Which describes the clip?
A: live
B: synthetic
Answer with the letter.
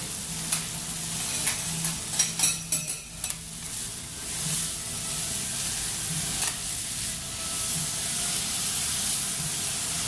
A